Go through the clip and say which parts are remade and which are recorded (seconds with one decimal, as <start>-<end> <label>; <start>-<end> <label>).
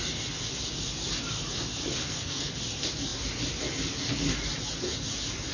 0.0-2.0 recorded; 2.0-2.5 remade; 2.5-5.5 recorded